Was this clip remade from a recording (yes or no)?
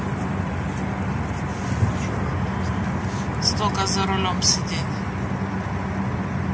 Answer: no